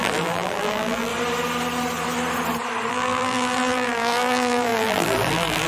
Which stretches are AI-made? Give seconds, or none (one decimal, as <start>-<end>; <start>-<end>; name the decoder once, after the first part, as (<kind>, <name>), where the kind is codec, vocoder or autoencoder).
0.0-1.1 (vocoder, BigVGAN v2); 2.9-5.7